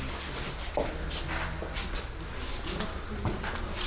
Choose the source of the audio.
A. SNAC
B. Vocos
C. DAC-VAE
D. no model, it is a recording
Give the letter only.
D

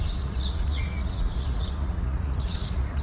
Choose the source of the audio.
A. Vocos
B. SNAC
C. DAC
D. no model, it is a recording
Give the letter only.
A